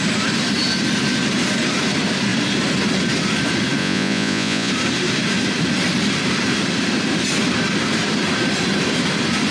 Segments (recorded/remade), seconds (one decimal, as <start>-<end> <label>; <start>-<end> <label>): 0.0-3.8 recorded; 3.8-4.7 remade; 4.7-9.5 recorded

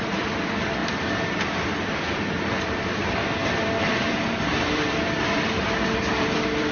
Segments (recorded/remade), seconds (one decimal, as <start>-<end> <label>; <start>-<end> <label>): 0.0-0.8 remade; 0.8-1.4 recorded; 1.4-6.7 remade

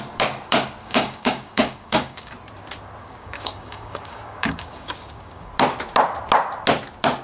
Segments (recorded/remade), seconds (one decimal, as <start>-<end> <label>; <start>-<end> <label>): 0.0-0.8 recorded; 0.8-2.3 remade; 2.3-3.0 recorded; 3.0-5.5 remade; 5.5-7.2 recorded

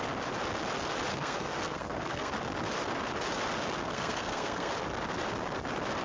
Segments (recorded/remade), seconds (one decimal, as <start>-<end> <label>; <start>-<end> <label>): 0.0-1.1 recorded; 1.1-2.3 remade; 2.3-3.8 recorded; 3.8-4.7 remade; 4.7-6.0 recorded

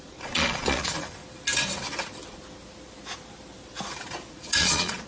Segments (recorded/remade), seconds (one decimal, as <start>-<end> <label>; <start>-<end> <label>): 0.0-1.2 remade; 1.2-4.3 recorded; 4.3-5.1 remade

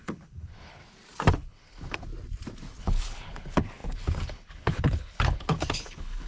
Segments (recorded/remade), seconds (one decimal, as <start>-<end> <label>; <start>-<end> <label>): 0.0-0.8 remade; 0.8-1.3 recorded; 1.3-2.1 remade; 2.1-2.8 recorded; 2.8-6.3 remade